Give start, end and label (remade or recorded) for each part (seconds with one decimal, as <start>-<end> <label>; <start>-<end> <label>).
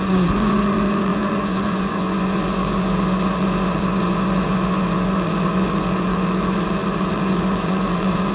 0.0-8.3 remade